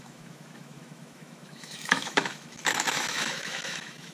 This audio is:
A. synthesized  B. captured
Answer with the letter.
A